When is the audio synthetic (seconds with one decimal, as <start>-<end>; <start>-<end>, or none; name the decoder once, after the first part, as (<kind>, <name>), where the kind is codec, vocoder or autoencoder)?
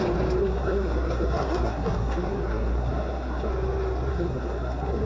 0.4-3.5 (codec, SNAC); 4.1-5.1